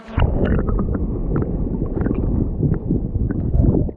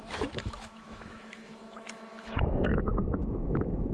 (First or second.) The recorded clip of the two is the first